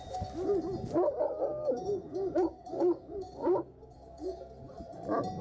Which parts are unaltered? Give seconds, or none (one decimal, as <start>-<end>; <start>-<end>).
0.0-1.5; 4.4-5.4